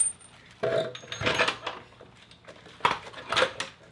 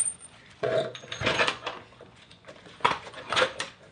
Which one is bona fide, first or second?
first